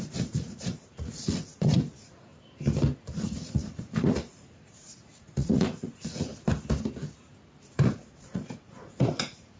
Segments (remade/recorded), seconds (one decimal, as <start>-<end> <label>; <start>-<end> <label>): 0.0-2.3 remade; 2.3-3.0 recorded; 3.0-6.3 remade; 6.3-7.6 recorded; 7.6-9.6 remade